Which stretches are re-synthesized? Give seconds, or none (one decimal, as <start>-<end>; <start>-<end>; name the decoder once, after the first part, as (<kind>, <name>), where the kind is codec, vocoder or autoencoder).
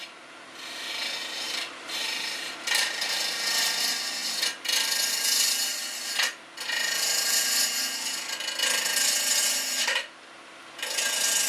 1.2-3.8 (vocoder, BigVGAN v2)